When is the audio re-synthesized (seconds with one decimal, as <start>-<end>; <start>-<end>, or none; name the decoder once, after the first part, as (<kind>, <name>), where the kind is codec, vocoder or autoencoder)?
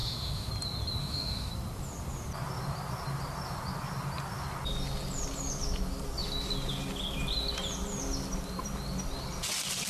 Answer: 0.0-0.5 (autoencoder, DAC-VAE); 1.0-1.5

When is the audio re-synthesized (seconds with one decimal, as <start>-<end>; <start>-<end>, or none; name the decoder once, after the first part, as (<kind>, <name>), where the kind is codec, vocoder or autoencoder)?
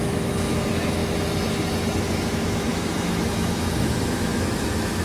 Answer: 0.0-1.0 (autoencoder, DAC-VAE); 2.0-5.0